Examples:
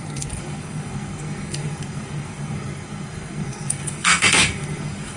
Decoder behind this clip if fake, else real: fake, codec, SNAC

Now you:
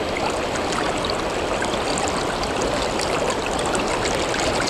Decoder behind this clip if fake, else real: real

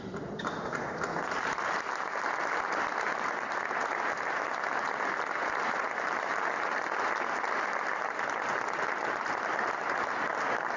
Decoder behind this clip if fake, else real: real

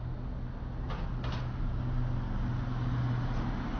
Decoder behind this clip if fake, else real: real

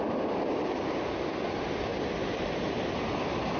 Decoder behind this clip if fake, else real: real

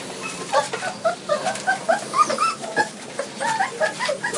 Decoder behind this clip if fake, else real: fake, vocoder, BigVGAN v2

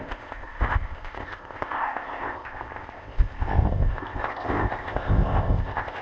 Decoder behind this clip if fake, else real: fake, codec, ZipCodec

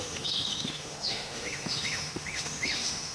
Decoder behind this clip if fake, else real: fake, autoencoder, DAC-VAE